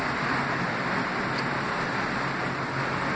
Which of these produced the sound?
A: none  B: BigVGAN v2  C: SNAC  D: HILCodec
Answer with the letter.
A